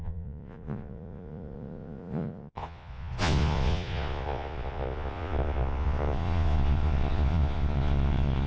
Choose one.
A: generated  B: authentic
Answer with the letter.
A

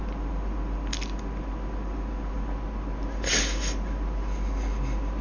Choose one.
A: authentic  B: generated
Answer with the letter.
A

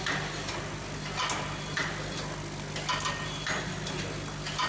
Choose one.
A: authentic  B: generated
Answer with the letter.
A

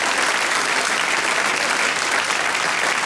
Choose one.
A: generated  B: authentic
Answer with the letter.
B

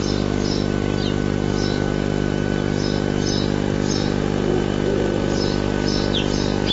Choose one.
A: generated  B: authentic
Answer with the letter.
B